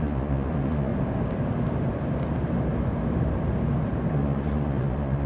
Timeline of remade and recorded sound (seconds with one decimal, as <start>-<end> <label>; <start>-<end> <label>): 0.0-0.9 remade; 0.9-4.1 recorded; 4.1-5.3 remade